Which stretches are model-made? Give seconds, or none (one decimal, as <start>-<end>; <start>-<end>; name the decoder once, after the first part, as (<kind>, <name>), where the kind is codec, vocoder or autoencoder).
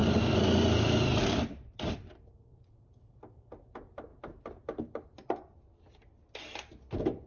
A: none